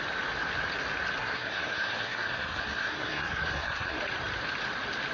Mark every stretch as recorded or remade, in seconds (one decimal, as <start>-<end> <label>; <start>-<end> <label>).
0.0-1.2 recorded; 1.2-4.0 remade; 4.0-5.1 recorded

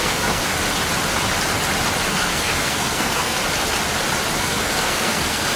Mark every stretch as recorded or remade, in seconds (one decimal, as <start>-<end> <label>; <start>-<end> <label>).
0.0-0.5 remade; 0.5-2.1 recorded; 2.1-3.4 remade; 3.4-4.4 recorded; 4.4-5.6 remade